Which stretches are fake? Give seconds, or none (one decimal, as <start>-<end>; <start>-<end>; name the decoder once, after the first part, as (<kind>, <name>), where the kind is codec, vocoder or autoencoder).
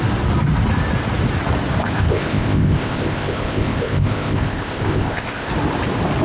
1.8-5.5 (codec, ZipCodec)